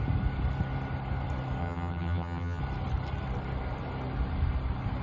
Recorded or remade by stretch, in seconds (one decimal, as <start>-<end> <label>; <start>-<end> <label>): 0.0-1.6 recorded; 1.6-2.6 remade; 2.6-5.0 recorded